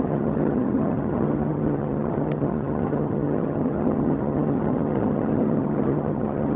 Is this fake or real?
fake